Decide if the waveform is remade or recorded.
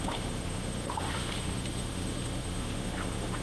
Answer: remade